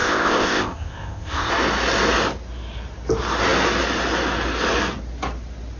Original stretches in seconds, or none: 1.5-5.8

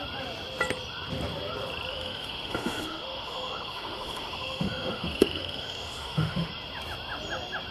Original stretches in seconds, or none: 0.0-1.9; 6.5-7.7